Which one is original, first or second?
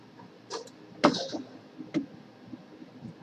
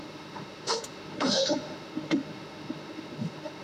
first